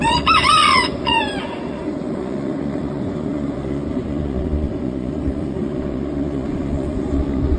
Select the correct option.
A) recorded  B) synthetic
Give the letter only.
B